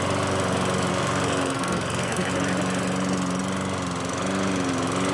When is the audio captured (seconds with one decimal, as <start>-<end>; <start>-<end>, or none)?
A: 0.0-0.9; 2.3-5.1